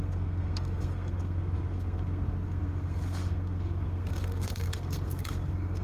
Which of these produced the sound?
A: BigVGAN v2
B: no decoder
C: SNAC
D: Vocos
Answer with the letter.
C